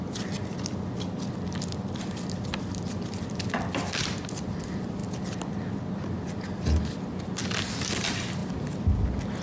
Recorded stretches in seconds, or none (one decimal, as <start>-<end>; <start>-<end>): 0.0-9.4